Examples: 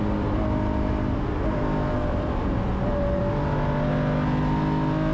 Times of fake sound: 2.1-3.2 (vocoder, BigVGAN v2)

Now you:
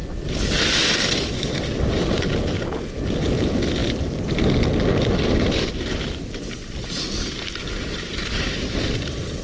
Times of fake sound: none

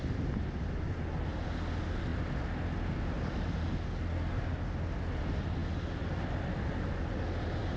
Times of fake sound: none

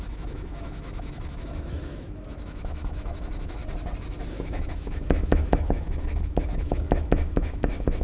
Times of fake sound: 0.0-3.6 (autoencoder, DAC-VAE); 4.3-8.0